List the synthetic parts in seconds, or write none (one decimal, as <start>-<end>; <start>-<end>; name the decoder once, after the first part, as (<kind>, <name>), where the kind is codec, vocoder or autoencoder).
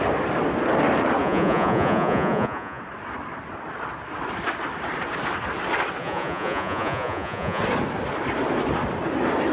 1.2-2.8 (vocoder, Vocos); 6.0-7.6